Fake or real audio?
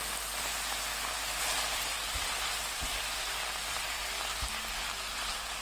real